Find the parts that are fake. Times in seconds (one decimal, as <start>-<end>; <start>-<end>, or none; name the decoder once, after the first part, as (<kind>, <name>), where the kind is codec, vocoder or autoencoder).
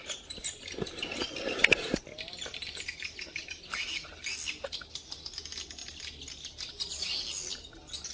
none